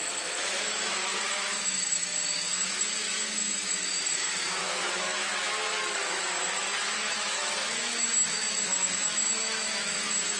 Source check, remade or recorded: remade